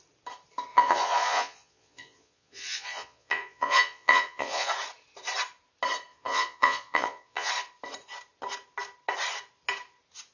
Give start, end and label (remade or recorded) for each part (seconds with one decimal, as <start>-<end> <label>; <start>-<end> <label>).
0.0-0.7 recorded; 0.7-4.7 remade; 4.7-6.1 recorded; 6.1-7.5 remade; 7.5-10.3 recorded